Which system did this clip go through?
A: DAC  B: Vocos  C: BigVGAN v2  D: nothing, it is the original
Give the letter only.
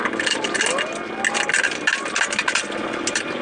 D